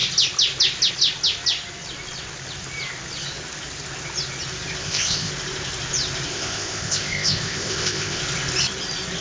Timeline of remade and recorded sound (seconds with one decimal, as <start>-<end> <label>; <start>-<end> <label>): 0.0-4.8 recorded; 4.8-5.3 remade; 5.3-6.3 recorded; 6.3-8.2 remade; 8.2-9.2 recorded